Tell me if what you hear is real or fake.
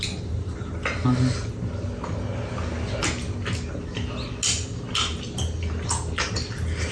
real